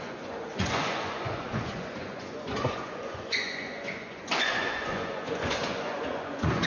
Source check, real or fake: fake